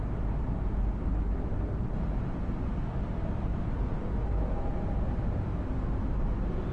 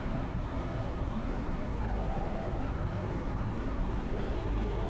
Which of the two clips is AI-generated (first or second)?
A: second